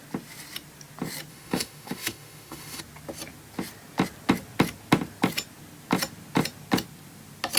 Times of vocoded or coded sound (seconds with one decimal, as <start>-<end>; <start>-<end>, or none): 1.3-2.8